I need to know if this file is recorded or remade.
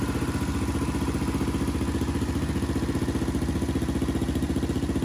recorded